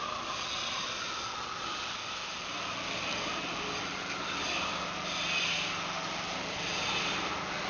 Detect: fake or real fake